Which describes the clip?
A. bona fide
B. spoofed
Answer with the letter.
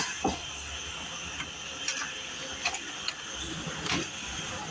B